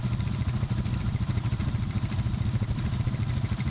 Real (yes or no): no